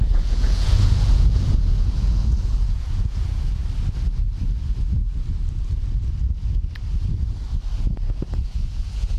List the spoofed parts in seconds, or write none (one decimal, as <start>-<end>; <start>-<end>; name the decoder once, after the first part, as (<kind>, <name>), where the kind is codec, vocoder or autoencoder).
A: 0.0-3.6 (vocoder, Vocos); 8.1-9.2